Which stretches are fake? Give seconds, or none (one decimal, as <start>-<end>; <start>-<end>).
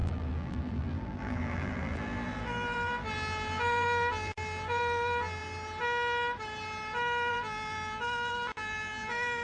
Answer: 0.0-5.4; 7.3-9.4